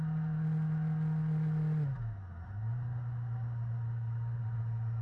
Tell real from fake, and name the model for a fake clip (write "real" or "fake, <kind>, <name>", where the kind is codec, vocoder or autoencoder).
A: real